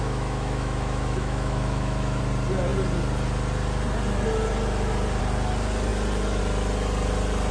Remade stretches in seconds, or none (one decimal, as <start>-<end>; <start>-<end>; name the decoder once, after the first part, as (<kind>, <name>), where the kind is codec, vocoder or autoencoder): 0.0-2.2 (autoencoder, DAC-VAE)